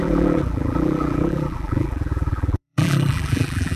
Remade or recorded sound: remade